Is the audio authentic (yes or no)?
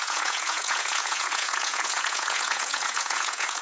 no